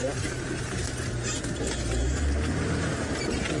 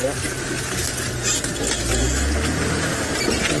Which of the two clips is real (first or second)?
second